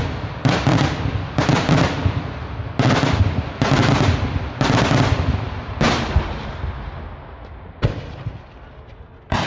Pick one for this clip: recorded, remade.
recorded